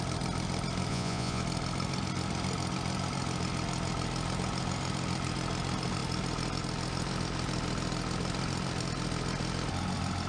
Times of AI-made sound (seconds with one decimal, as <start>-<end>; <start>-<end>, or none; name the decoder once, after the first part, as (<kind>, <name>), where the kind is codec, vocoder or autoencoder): 0.9-1.4 (vocoder, Vocos)